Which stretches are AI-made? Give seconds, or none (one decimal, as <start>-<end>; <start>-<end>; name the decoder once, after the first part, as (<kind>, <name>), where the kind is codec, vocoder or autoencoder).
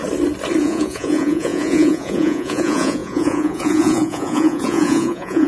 0.6-5.5 (vocoder, Vocos)